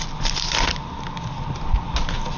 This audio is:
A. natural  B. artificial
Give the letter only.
A